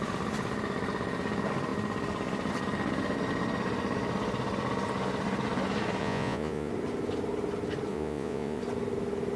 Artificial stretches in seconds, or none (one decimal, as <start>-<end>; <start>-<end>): 6.0-6.7; 7.9-8.6